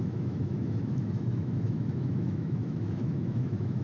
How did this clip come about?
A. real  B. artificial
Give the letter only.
B